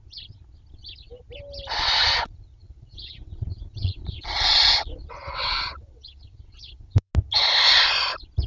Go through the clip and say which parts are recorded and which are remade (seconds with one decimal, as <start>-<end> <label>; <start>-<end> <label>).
0.0-2.0 recorded; 2.0-7.1 remade; 7.1-8.5 recorded